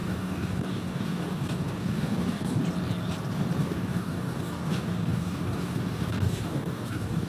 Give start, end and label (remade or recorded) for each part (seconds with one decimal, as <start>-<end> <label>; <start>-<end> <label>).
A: 0.0-2.6 remade; 2.6-3.6 recorded; 3.6-7.3 remade